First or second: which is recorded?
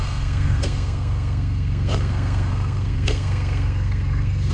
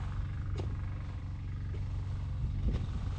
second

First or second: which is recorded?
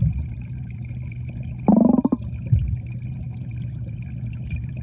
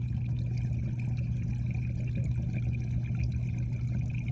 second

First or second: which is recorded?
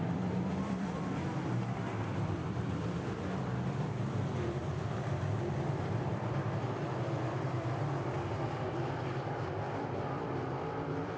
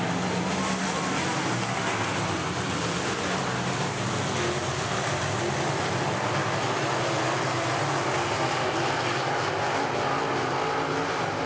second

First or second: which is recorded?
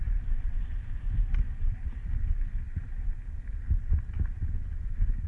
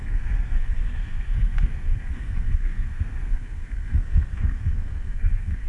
first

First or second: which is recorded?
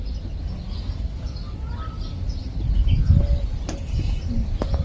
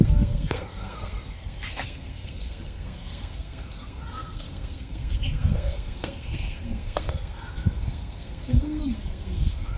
first